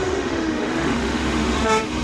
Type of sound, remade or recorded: remade